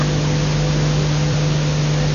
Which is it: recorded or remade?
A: recorded